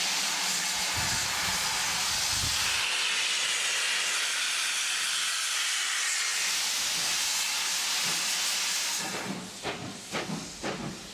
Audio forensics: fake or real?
real